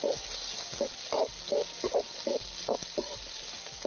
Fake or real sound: real